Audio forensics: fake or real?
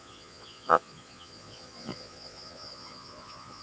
fake